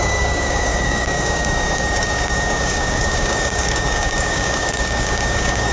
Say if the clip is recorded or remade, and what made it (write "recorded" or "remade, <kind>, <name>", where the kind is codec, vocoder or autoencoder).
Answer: remade, codec, DAC